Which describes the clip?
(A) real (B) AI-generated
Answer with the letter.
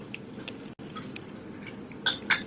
A